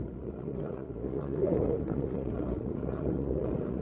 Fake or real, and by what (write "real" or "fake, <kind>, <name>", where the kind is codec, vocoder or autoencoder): fake, vocoder, Vocos